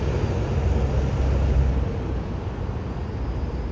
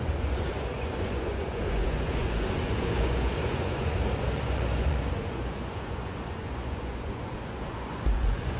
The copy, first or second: second